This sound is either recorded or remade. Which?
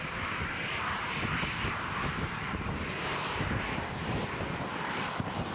recorded